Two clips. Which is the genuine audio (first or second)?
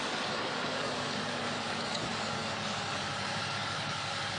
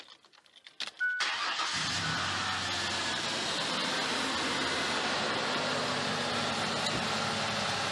second